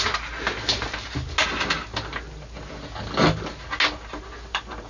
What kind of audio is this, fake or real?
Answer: real